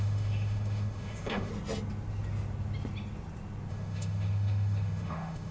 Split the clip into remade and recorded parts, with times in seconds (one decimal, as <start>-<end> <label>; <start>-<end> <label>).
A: 0.0-1.5 remade; 1.5-3.7 recorded; 3.7-5.5 remade